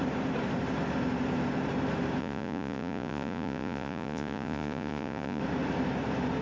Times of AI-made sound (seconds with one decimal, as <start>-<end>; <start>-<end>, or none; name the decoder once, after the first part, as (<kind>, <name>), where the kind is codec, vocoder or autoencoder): 2.2-5.4 (vocoder, Vocos)